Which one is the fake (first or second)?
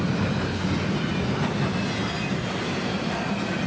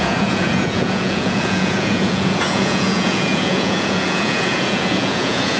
second